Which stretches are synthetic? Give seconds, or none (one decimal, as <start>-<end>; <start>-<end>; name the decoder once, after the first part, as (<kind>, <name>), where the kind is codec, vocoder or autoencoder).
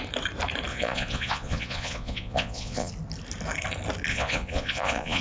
0.7-2.9 (vocoder, Vocos); 4.1-5.2